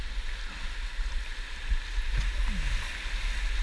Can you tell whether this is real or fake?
real